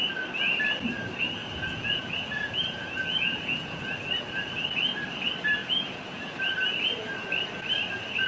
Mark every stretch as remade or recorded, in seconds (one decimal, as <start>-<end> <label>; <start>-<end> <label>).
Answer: 0.0-1.4 recorded; 1.4-3.9 remade; 3.9-5.6 recorded; 5.6-6.4 remade; 6.4-8.3 recorded